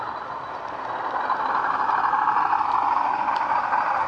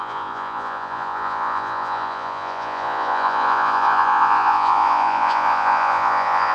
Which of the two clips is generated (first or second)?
second